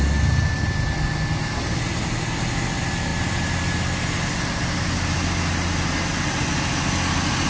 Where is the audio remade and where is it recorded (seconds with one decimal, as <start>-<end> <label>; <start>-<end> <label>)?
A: 0.0-7.5 recorded